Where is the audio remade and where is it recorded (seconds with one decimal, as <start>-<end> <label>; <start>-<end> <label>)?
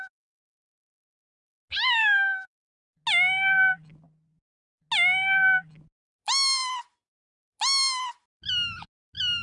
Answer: 0.0-9.4 recorded